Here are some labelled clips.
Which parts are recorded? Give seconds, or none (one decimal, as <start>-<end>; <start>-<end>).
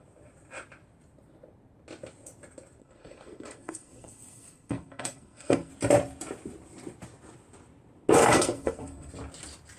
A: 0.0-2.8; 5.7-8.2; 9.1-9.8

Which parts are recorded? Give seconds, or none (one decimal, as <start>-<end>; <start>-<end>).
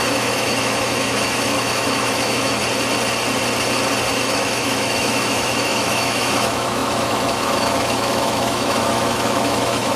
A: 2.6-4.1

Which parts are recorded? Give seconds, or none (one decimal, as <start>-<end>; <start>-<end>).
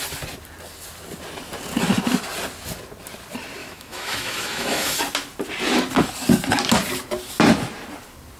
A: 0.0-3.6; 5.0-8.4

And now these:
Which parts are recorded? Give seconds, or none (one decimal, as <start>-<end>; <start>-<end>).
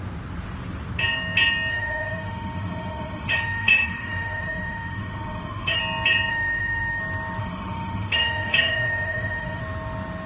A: 0.0-1.7; 5.8-6.3; 7.0-7.4; 9.6-10.3